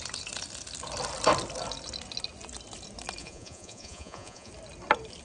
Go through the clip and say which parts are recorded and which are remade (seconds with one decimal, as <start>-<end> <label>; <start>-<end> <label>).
0.0-3.2 recorded; 3.2-4.5 remade; 4.5-5.2 recorded